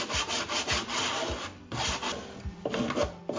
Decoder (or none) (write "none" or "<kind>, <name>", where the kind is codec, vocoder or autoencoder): none